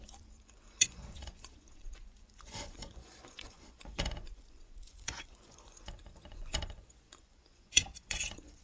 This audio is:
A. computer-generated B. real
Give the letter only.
A